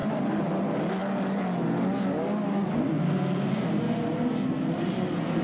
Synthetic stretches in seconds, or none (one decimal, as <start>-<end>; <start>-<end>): 0.0-0.5